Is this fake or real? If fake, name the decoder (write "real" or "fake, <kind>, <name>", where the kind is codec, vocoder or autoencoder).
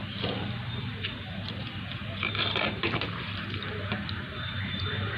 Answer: fake, vocoder, BigVGAN v2